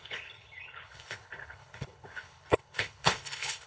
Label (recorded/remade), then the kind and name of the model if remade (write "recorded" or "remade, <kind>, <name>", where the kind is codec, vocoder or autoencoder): remade, codec, HILCodec